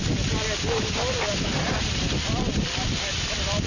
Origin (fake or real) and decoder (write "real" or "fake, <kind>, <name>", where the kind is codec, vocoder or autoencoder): real